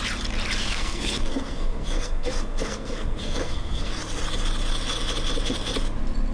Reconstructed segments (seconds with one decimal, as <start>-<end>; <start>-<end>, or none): 0.6-3.9